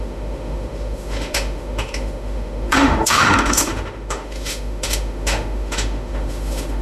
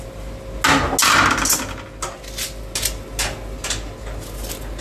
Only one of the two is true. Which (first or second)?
second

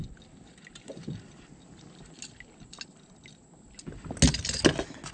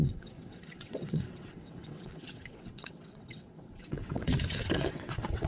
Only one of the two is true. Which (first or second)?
first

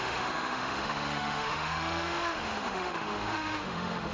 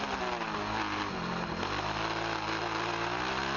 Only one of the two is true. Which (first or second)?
second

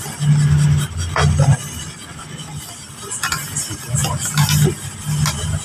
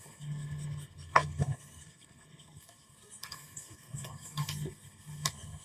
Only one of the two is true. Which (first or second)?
first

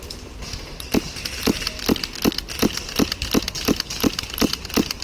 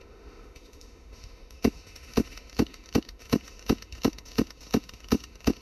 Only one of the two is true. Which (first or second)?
first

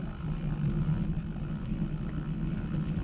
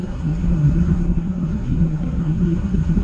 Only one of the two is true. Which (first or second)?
first